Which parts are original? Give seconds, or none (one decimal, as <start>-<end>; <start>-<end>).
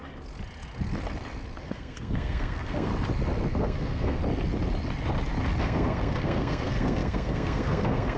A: 0.0-1.6; 2.9-3.5; 4.2-5.6